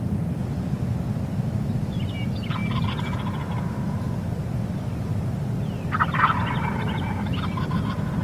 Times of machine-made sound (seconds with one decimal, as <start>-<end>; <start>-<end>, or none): none